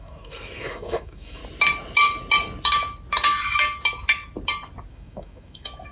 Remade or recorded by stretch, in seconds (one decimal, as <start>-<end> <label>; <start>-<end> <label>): 0.0-1.4 remade; 1.4-4.9 recorded; 4.9-5.9 remade